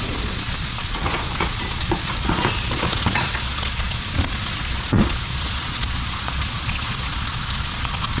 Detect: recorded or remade remade